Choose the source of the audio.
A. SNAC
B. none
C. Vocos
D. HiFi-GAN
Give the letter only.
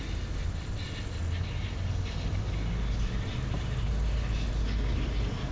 B